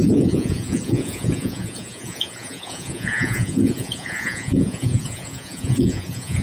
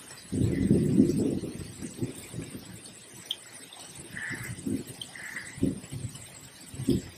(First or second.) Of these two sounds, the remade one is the first